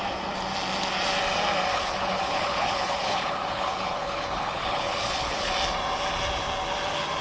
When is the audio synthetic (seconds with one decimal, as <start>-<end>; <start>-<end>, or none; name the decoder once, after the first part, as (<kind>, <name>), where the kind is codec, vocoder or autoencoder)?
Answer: 1.7-5.5 (codec, HILCodec)